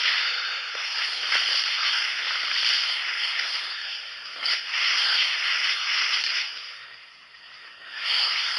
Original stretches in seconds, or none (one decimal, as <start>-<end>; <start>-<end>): 1.2-1.7; 2.3-2.9